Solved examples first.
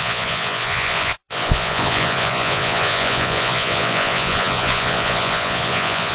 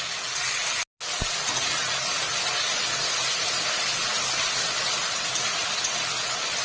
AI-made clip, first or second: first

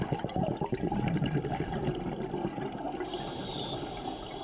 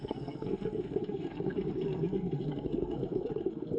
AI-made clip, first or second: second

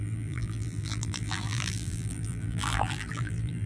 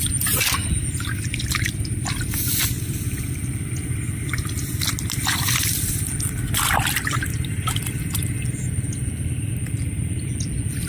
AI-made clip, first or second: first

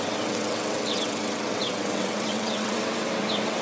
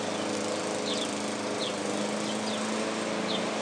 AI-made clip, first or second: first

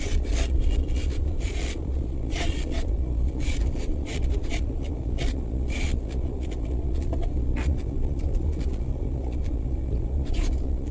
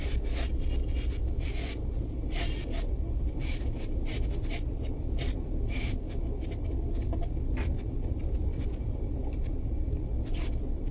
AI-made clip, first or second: first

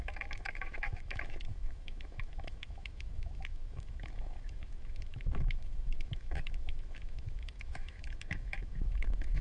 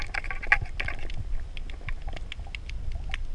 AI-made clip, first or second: first